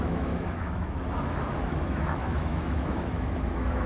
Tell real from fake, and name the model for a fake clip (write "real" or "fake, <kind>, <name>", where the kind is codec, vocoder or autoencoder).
fake, autoencoder, DAC-VAE